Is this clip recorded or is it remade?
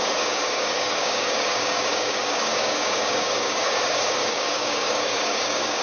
remade